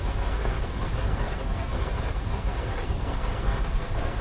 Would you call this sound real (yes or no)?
no